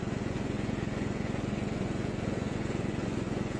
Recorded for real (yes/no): no